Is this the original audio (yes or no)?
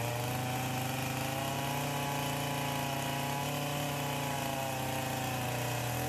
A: yes